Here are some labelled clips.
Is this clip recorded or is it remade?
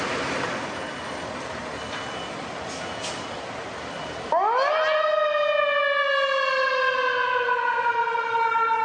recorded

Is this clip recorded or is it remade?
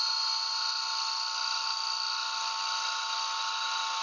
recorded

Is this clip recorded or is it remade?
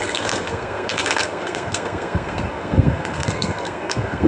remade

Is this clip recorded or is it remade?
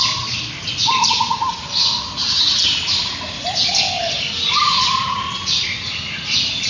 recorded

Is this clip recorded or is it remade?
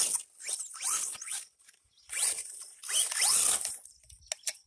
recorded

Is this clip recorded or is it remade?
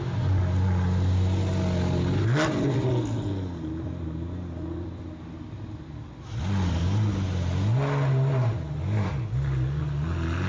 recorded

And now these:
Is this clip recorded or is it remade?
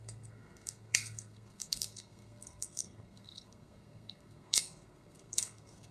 remade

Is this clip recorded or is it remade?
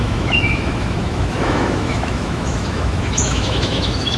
remade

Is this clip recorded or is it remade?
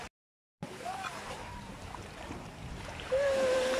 remade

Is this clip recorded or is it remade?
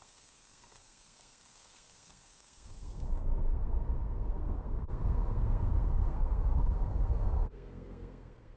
remade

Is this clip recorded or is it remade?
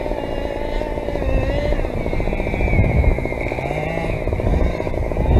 recorded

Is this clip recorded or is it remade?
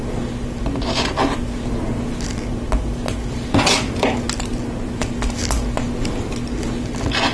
recorded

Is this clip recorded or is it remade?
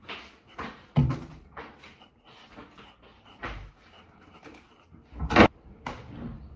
recorded